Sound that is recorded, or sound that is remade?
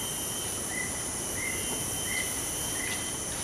recorded